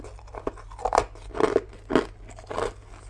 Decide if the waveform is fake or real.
real